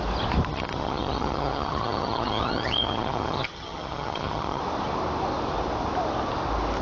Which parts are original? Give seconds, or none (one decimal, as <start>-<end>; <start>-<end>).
0.0-0.5; 4.6-6.8